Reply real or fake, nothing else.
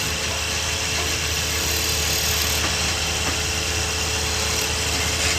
real